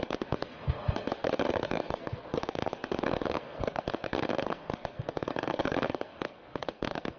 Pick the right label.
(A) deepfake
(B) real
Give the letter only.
A